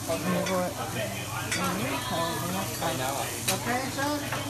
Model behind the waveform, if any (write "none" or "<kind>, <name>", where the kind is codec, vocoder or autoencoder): none